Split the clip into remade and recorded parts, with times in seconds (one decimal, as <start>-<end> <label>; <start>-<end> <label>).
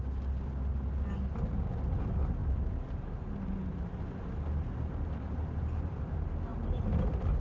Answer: 0.0-7.4 recorded